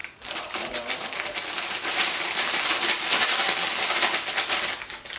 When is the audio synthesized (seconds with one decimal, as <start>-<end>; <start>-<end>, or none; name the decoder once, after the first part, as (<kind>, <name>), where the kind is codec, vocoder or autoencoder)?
0.0-1.2 (vocoder, BigVGAN v2)